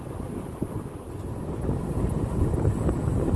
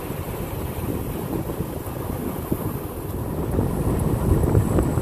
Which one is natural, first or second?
first